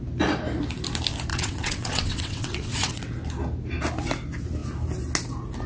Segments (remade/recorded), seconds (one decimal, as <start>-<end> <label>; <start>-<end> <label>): 0.0-1.3 recorded; 1.3-3.1 remade; 3.1-5.7 recorded